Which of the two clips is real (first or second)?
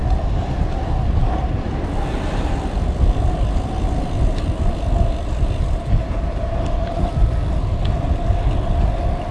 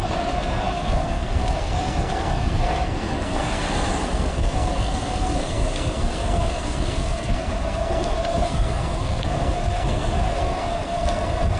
first